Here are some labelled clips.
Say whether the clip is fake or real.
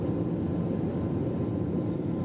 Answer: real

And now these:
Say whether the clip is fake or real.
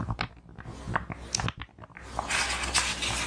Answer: real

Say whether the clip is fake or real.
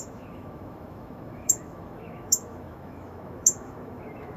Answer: fake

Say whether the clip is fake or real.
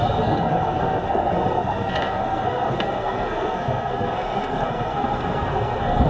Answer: fake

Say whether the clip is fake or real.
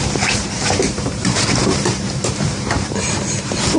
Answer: fake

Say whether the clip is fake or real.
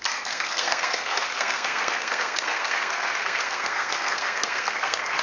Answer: fake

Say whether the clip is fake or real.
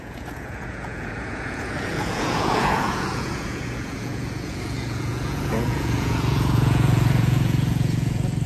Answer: fake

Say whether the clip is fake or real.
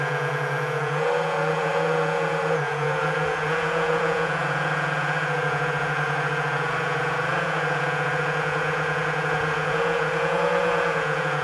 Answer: fake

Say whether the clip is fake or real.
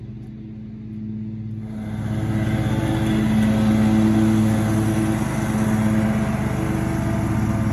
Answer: real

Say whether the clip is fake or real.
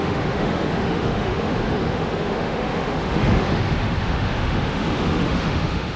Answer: fake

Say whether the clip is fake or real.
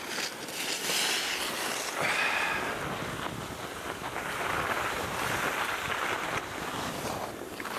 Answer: real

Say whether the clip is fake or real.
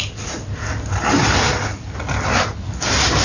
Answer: real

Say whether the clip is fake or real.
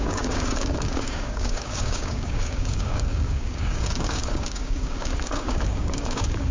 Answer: fake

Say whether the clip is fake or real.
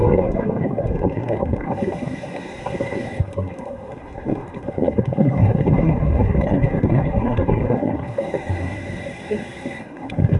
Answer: fake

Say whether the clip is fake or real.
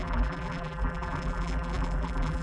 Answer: fake